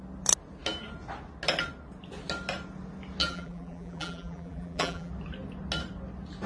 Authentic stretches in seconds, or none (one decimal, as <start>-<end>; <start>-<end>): 0.0-3.2; 5.1-6.5